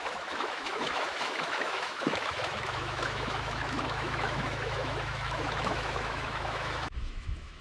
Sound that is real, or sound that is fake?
fake